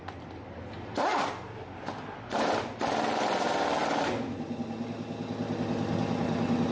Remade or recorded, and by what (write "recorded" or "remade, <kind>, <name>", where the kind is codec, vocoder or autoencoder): recorded